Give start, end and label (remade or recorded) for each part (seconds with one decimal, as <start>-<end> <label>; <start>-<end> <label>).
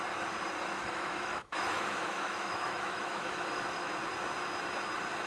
0.0-0.7 recorded; 0.7-3.9 remade; 3.9-5.3 recorded